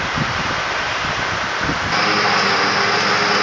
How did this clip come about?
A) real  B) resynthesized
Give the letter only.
A